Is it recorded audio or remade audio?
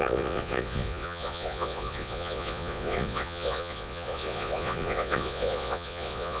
remade